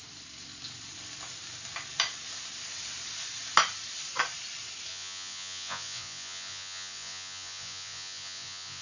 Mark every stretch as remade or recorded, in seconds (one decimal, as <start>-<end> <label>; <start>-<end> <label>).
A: 0.0-4.9 recorded; 4.9-8.8 remade